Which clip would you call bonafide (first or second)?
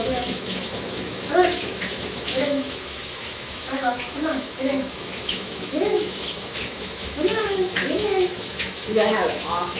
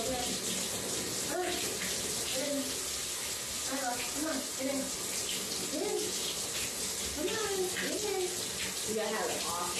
second